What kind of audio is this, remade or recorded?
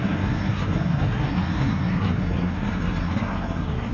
remade